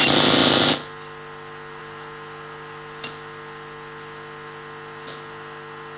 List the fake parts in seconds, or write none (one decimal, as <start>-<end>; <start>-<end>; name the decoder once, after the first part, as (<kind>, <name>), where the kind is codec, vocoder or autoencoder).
none